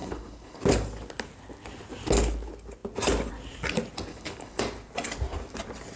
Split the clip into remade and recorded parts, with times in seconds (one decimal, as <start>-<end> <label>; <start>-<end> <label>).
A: 0.0-0.6 remade; 0.6-4.1 recorded; 4.1-4.6 remade; 4.6-6.0 recorded